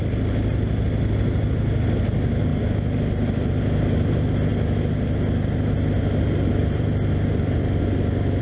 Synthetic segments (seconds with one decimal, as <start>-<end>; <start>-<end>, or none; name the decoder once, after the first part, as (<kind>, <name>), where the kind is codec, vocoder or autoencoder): 2.5-3.5 (vocoder, BigVGAN v2); 6.6-7.3